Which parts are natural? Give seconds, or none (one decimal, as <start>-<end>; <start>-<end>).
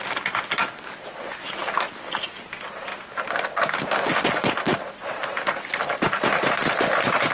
0.0-7.3